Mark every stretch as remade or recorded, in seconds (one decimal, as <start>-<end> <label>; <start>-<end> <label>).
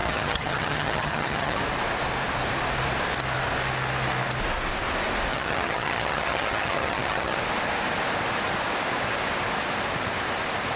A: 0.0-1.6 remade; 1.6-5.3 recorded; 5.3-7.4 remade; 7.4-10.8 recorded